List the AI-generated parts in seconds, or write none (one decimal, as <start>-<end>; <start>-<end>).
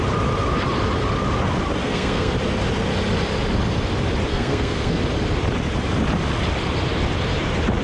1.8-2.3; 4.3-5.0